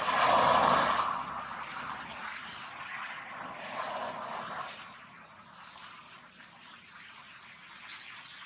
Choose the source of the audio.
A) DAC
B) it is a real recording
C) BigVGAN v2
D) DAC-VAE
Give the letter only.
B